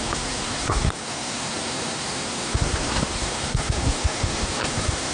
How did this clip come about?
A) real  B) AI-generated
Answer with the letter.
B